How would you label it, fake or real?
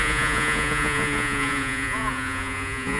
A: fake